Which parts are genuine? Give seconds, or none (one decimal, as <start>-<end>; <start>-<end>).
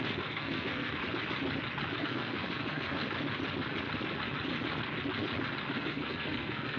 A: 1.0-2.0; 3.0-5.7